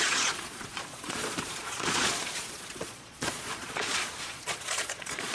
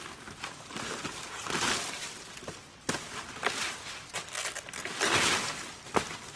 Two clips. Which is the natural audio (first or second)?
second